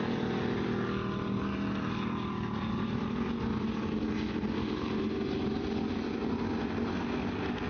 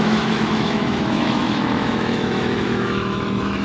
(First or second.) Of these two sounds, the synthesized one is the second